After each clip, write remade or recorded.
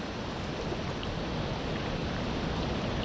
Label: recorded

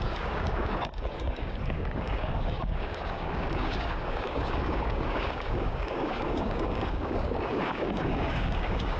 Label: remade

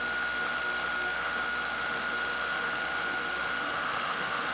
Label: remade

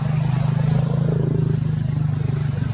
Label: recorded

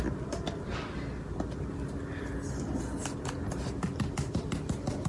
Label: recorded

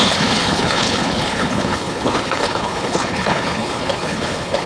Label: remade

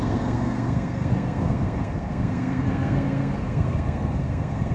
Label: remade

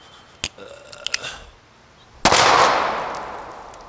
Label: recorded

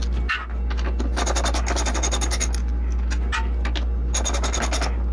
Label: recorded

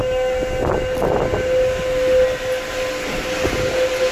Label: recorded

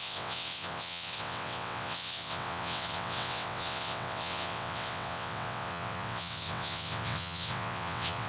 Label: remade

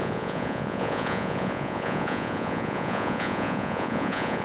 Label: remade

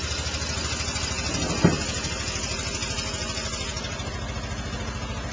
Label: recorded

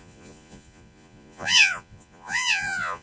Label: remade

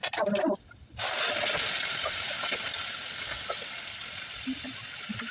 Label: recorded